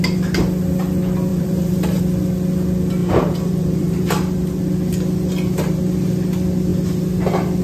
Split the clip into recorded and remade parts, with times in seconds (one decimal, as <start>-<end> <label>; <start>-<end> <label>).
0.0-1.3 recorded; 1.3-2.0 remade; 2.0-3.0 recorded; 3.0-4.1 remade; 4.1-7.6 recorded